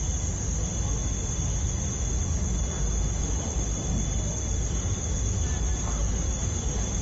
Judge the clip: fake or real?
real